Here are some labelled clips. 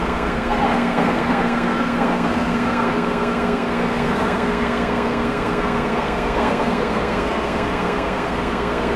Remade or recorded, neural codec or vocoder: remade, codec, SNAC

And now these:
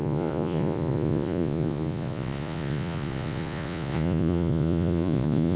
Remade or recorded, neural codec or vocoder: remade, vocoder, Vocos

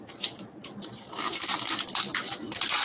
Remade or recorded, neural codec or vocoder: remade, vocoder, BigVGAN v2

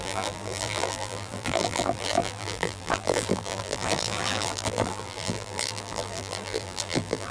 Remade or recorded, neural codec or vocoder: remade, vocoder, BigVGAN v2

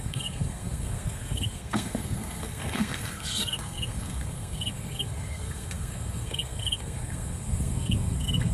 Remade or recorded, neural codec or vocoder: remade, codec, SNAC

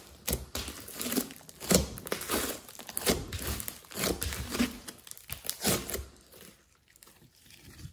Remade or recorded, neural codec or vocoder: recorded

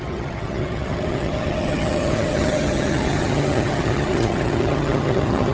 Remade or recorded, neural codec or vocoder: remade, vocoder, HiFi-GAN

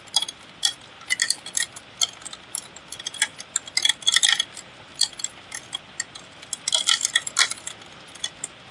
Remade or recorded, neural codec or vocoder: recorded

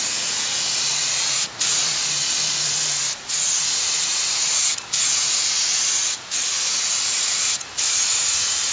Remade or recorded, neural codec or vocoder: remade, vocoder, Vocos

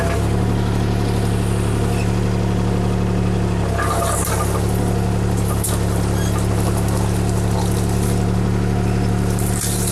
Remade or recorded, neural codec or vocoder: recorded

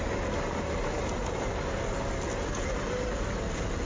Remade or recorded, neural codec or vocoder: recorded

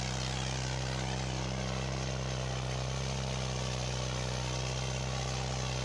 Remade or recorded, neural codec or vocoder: recorded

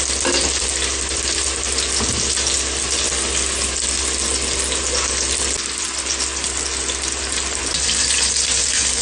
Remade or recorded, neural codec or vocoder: recorded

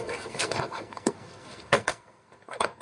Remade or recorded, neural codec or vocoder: remade, codec, SNAC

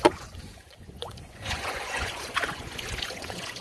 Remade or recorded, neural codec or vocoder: remade, vocoder, Vocos